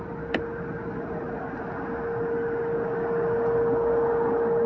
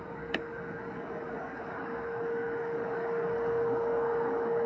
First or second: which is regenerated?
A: second